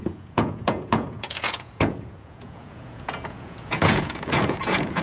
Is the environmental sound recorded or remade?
remade